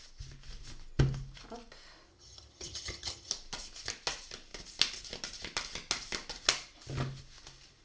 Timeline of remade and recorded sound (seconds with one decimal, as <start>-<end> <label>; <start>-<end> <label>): 0.0-2.1 recorded; 2.1-3.3 remade; 3.3-7.8 recorded